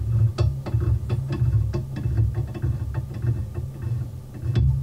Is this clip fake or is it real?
real